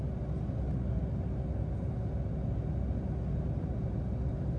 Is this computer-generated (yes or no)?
no